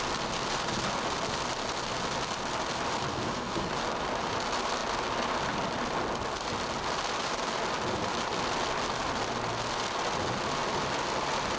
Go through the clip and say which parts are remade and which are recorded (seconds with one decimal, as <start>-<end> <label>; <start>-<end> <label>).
0.0-3.1 recorded; 3.1-3.7 remade; 3.7-11.6 recorded